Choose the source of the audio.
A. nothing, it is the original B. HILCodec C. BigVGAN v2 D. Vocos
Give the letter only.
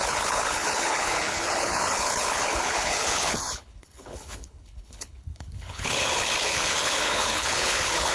B